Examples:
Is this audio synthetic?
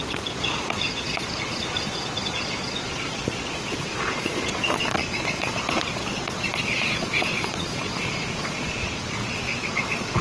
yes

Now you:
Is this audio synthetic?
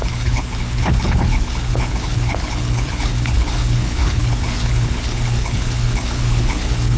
yes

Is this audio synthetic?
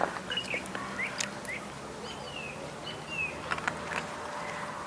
no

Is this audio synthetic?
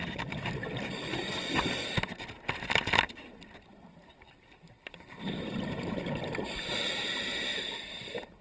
yes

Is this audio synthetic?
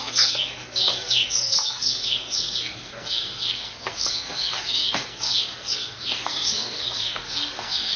yes